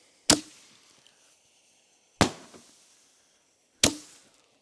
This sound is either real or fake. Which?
real